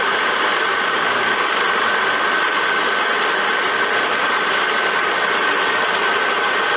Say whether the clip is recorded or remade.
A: recorded